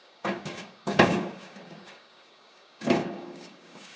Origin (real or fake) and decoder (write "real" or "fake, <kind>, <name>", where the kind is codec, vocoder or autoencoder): fake, codec, DAC